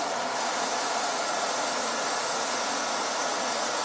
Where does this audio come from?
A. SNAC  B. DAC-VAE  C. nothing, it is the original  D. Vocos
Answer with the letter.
D